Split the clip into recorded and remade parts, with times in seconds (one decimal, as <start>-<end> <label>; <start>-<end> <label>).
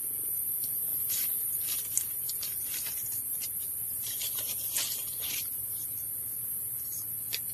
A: 0.0-7.5 recorded